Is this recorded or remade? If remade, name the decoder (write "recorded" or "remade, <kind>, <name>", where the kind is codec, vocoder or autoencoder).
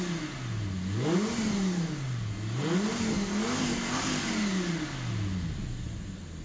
recorded